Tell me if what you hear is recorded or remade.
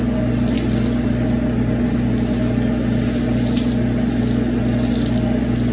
recorded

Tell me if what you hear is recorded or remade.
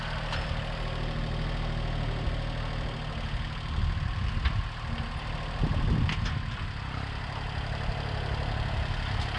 recorded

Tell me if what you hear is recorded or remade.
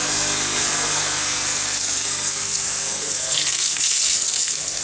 remade